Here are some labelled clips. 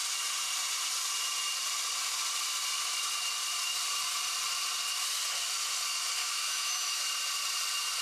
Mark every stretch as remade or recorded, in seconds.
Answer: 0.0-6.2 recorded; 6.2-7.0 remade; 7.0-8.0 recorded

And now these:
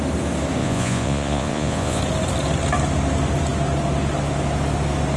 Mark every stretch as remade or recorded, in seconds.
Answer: 0.0-0.6 recorded; 0.6-2.0 remade; 2.0-5.2 recorded

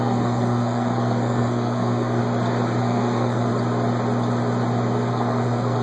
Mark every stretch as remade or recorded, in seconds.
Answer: 0.0-2.2 remade; 2.2-2.8 recorded; 2.8-3.5 remade; 3.5-5.1 recorded; 5.1-5.8 remade